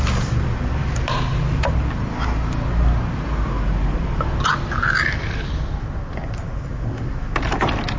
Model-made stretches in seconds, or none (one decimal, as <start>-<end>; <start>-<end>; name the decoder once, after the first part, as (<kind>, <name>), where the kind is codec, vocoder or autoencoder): none